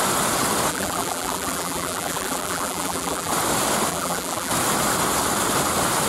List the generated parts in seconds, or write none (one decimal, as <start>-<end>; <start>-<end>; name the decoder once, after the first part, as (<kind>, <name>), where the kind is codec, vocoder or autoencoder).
0.7-3.3 (vocoder, BigVGAN v2); 3.9-4.5